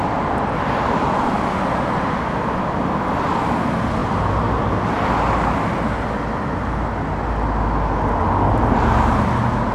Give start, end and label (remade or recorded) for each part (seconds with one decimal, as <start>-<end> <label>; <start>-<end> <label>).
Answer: 0.0-9.7 recorded